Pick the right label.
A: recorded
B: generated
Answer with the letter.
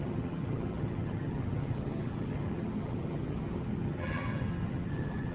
B